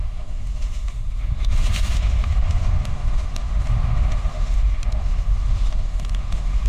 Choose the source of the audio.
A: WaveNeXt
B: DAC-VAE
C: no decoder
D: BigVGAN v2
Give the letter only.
B